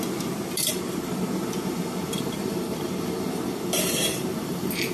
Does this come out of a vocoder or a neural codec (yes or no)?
yes